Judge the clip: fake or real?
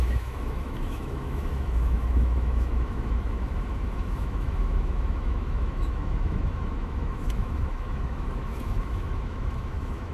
fake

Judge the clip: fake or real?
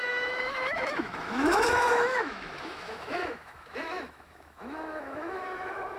fake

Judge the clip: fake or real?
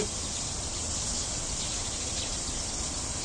real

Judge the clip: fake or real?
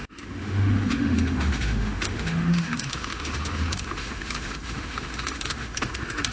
fake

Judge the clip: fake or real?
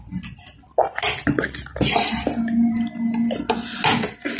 real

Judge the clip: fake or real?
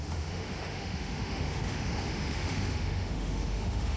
fake